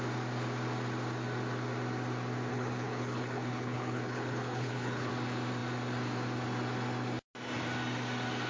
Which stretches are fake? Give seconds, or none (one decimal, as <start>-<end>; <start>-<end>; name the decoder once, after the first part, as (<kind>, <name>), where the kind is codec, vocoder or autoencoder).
2.5-5.1 (codec, HILCodec)